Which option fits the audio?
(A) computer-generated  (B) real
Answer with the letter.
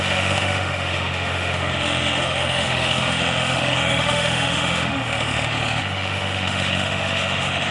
A